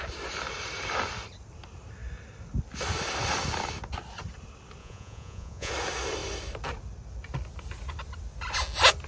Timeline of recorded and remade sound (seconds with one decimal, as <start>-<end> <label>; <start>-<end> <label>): 0.0-4.8 recorded; 4.8-5.7 remade; 5.7-9.1 recorded